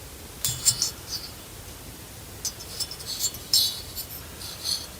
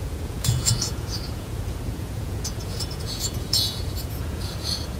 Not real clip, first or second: second